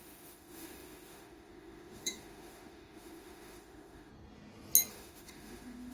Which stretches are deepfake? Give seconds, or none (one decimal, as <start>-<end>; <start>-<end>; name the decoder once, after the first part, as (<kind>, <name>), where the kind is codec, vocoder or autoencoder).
0.0-4.1 (autoencoder, DAC-VAE); 4.9-5.9